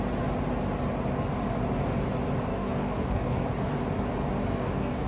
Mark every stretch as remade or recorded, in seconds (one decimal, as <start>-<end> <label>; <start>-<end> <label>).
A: 0.0-2.5 recorded; 2.5-3.4 remade; 3.4-4.5 recorded; 4.5-5.1 remade